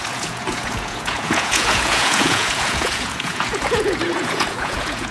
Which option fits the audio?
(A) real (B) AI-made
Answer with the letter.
B